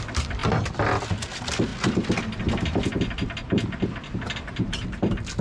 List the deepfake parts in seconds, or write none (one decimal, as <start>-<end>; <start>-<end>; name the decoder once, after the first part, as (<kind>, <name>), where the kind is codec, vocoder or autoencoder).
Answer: none